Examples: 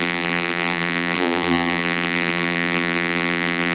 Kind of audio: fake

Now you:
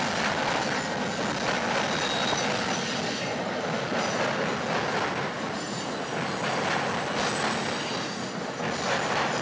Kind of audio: real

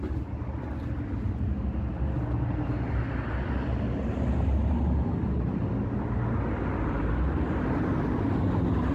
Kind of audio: real